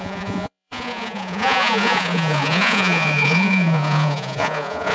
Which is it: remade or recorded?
remade